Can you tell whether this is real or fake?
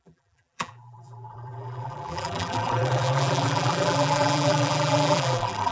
fake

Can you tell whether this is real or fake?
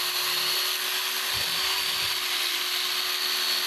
real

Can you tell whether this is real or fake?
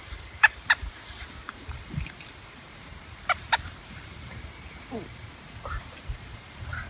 fake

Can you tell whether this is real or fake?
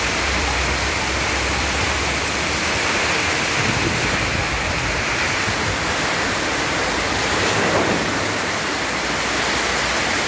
fake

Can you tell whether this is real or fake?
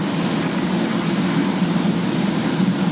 real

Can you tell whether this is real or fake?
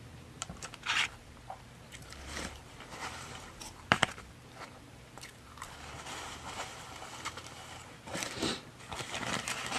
fake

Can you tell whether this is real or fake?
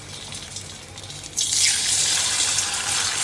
real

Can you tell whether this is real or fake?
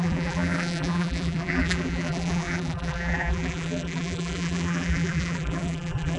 fake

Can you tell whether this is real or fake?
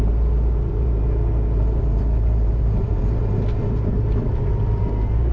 fake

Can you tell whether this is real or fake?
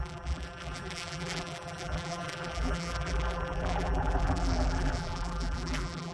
fake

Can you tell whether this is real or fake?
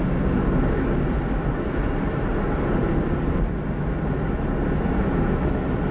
real